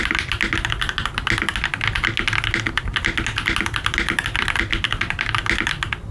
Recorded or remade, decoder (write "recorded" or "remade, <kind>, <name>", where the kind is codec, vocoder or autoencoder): recorded